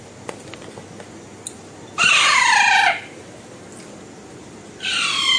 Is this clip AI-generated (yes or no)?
no